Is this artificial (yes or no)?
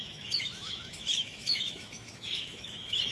yes